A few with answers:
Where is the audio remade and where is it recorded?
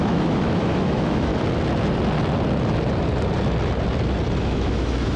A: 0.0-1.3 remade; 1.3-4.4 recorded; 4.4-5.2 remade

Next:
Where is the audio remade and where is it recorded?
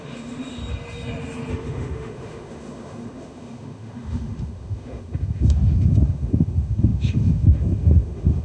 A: 0.0-0.6 remade; 0.6-1.5 recorded; 1.5-8.4 remade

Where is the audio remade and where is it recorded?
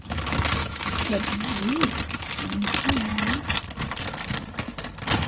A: 0.0-0.6 recorded; 0.6-1.6 remade; 1.6-5.3 recorded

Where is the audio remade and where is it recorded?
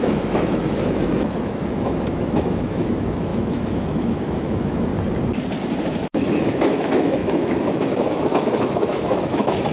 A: 0.0-4.9 remade; 4.9-5.9 recorded; 5.9-9.7 remade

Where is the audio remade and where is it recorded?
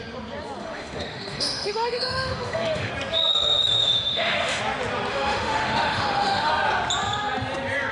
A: 0.0-0.6 recorded; 0.6-2.9 remade; 2.9-3.3 recorded; 3.3-4.6 remade; 4.6-5.1 recorded; 5.1-6.5 remade; 6.5-7.9 recorded